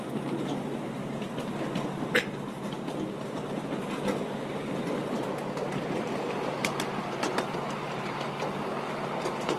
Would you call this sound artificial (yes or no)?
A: no